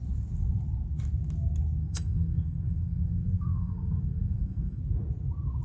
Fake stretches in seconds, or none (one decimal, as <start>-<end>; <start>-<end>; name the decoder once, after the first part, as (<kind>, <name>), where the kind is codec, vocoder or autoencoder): 1.8-4.8 (codec, SNAC)